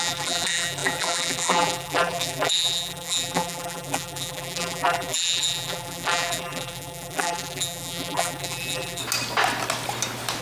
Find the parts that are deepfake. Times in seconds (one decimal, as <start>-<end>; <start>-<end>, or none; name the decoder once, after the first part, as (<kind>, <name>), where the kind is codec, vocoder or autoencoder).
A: 0.0-9.0 (vocoder, BigVGAN v2)